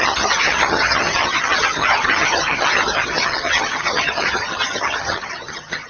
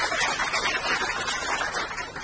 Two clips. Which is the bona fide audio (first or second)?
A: second